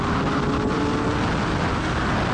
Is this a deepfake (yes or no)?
no